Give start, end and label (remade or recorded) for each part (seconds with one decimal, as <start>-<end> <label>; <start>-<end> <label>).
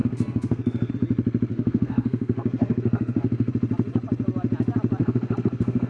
0.0-0.9 remade; 0.9-1.5 recorded; 1.5-3.5 remade; 3.5-5.0 recorded; 5.0-5.9 remade